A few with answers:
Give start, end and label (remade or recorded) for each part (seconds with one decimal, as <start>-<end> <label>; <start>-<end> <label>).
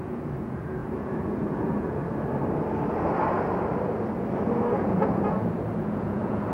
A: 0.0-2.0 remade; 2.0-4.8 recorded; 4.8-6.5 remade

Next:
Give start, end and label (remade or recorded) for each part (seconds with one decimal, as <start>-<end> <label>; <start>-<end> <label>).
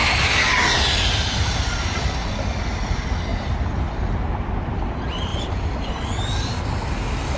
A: 0.0-5.3 recorded; 5.3-6.5 remade; 6.5-7.4 recorded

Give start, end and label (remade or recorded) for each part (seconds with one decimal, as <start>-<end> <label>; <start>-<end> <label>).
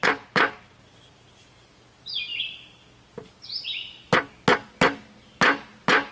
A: 0.0-6.1 recorded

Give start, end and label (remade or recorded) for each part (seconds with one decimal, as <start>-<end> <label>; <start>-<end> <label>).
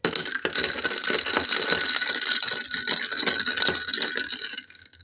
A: 0.0-5.0 recorded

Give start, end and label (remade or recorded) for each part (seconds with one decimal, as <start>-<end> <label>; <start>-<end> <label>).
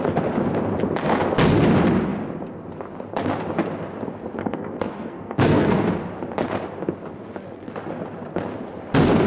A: 0.0-4.4 recorded; 4.4-5.9 remade; 5.9-9.3 recorded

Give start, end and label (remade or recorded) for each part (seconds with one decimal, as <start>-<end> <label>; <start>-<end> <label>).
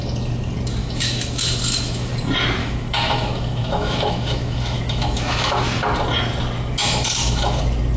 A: 0.0-0.8 recorded; 0.8-2.1 remade; 2.1-2.6 recorded; 2.6-5.6 remade; 5.6-6.8 recorded; 6.8-7.6 remade; 7.6-8.0 recorded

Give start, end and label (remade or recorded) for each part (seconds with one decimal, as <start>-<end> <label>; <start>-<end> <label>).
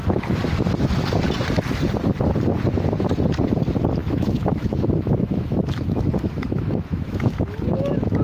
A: 0.0-4.0 recorded; 4.0-8.2 remade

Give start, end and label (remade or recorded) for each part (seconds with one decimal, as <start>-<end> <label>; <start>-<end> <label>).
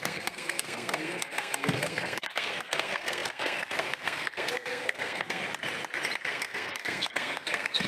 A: 0.0-5.4 remade; 5.4-6.3 recorded; 6.3-7.9 remade